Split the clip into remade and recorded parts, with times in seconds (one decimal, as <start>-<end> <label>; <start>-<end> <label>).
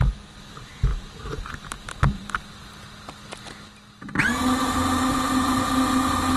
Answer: 0.0-6.4 recorded